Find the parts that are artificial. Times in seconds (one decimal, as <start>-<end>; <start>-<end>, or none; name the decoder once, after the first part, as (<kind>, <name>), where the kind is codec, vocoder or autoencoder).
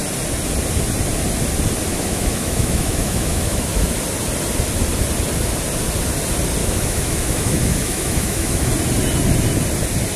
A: 1.9-3.9 (autoencoder, DAC-VAE); 6.6-8.7